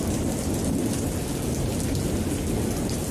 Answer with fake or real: real